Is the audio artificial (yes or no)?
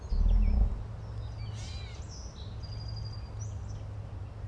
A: no